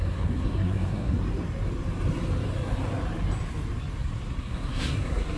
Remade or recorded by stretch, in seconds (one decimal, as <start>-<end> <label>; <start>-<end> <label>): 0.0-1.2 remade; 1.2-4.4 recorded; 4.4-5.4 remade